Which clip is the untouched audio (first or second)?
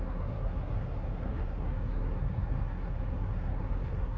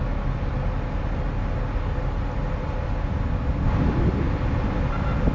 second